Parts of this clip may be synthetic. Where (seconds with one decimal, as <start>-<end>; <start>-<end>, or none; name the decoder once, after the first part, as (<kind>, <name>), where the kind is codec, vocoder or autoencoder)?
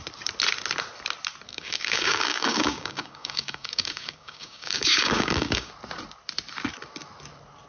1.5-5.7 (codec, DAC)